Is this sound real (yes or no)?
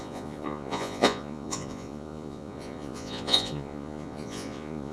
no